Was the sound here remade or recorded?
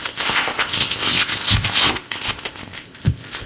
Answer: remade